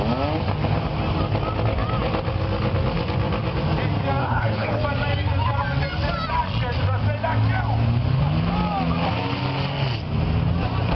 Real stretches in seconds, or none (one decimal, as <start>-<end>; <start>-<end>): 0.0-4.2; 4.8-10.9